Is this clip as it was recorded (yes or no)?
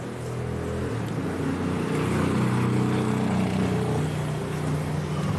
yes